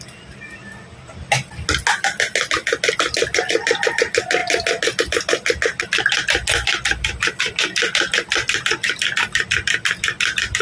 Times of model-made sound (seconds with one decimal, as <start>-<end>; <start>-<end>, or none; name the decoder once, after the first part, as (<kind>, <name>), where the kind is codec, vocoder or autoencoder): none